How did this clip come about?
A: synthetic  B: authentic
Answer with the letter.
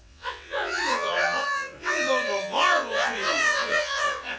A